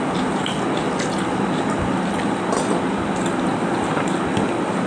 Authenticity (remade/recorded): recorded